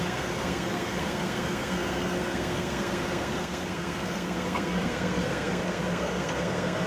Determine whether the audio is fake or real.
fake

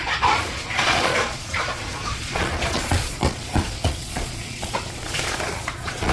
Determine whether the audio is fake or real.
fake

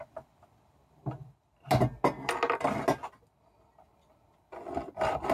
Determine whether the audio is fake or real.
real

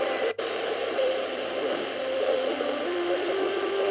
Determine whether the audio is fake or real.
fake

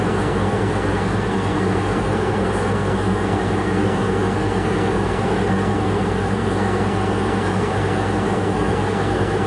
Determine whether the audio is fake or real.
fake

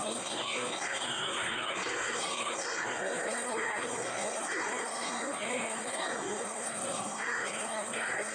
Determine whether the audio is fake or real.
fake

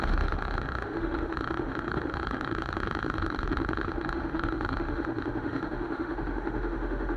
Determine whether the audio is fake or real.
fake